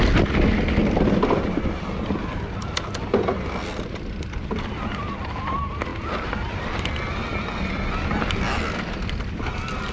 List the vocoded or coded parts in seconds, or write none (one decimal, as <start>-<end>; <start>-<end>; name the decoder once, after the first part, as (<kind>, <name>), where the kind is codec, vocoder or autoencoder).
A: none